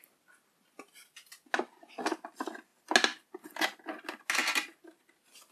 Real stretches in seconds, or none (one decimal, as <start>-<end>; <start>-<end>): 0.0-5.5